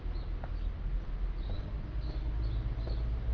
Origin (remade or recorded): recorded